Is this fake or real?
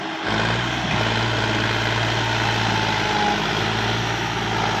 real